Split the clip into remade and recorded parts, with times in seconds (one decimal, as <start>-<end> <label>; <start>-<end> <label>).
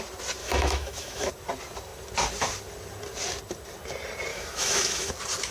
0.0-0.4 recorded; 0.4-1.3 remade; 1.3-4.3 recorded; 4.3-5.1 remade; 5.1-5.5 recorded